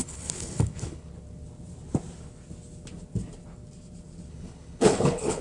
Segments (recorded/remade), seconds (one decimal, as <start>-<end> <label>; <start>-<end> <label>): 0.0-1.1 remade; 1.1-4.3 recorded; 4.3-5.4 remade